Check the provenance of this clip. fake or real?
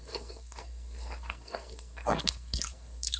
fake